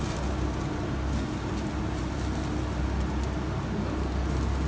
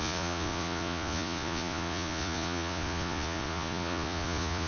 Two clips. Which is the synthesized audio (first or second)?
second